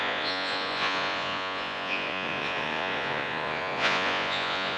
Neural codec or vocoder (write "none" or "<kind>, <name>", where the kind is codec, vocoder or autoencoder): vocoder, Vocos